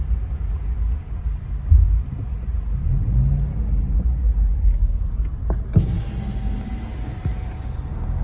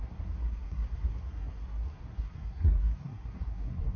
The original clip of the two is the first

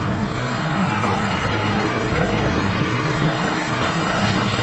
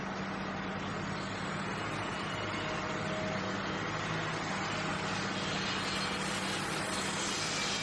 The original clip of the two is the second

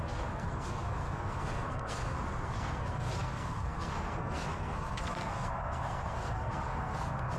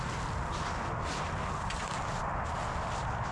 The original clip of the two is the second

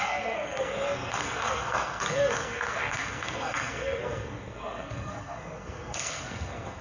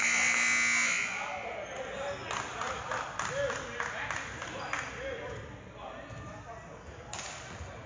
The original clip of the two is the second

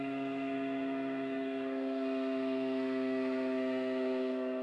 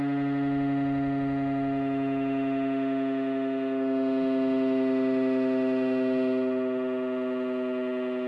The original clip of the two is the second